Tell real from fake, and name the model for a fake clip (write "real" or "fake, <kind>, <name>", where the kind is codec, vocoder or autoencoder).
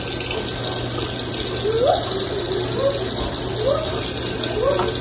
real